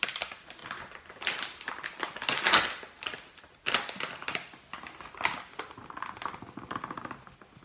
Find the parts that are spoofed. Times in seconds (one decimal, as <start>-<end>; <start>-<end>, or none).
none